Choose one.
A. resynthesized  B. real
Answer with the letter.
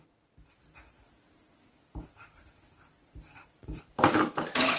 A